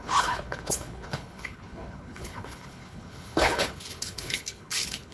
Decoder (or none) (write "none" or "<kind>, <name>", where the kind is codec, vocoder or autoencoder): codec, HILCodec